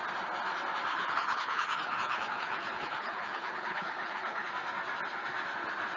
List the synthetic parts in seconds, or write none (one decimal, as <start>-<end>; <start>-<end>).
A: 0.9-4.5